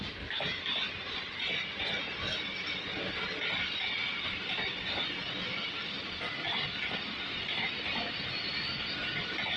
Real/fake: real